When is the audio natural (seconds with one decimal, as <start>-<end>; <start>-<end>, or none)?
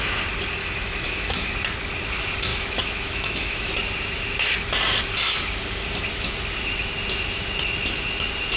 0.0-0.6; 1.5-2.5; 3.7-8.6